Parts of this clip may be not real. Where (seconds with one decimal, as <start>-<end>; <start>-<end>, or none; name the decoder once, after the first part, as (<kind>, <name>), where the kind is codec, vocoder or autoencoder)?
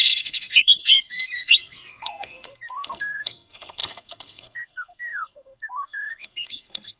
0.0-7.0 (codec, SNAC)